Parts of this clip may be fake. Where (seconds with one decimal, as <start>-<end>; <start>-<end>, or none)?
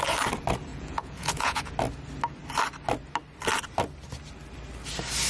0.7-1.7